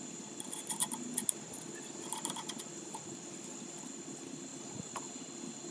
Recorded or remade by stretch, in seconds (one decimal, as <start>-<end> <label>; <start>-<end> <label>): 0.0-5.7 recorded